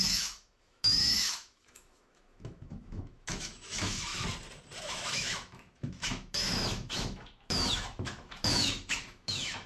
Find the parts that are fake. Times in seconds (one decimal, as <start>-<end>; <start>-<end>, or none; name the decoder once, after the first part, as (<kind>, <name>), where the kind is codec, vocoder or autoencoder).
0.0-4.1 (autoencoder, DAC-VAE); 4.8-9.7